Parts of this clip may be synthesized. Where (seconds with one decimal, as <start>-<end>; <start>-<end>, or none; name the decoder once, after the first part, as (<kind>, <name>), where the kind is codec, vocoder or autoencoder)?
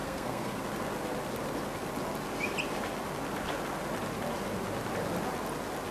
0.0-0.6 (codec, SNAC)